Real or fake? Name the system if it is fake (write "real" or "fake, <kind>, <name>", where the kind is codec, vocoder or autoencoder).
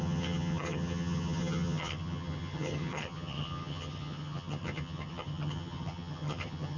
fake, vocoder, HiFi-GAN